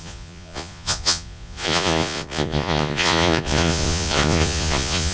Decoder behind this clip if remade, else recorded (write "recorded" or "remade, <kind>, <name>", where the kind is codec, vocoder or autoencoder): remade, vocoder, Vocos